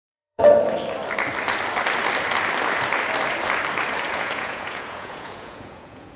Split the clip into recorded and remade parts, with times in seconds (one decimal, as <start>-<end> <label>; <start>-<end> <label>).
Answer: 0.0-0.4 remade; 0.4-4.1 recorded; 4.1-6.2 remade